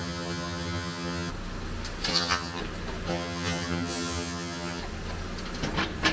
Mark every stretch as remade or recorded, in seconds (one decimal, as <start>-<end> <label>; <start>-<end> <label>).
0.0-1.3 remade; 1.3-2.1 recorded; 2.1-2.6 remade; 2.6-3.1 recorded; 3.1-4.8 remade; 4.8-6.1 recorded